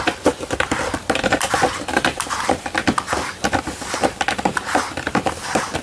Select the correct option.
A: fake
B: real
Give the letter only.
B